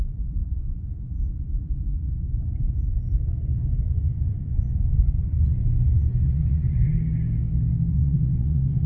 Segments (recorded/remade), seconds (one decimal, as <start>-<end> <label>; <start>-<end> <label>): 0.0-6.9 remade; 6.9-7.9 recorded; 7.9-8.9 remade